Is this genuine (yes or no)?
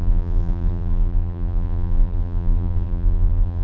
no